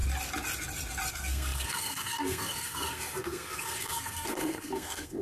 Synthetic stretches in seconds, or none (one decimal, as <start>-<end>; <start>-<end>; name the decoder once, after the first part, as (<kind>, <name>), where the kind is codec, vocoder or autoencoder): 1.1-5.2 (codec, SNAC)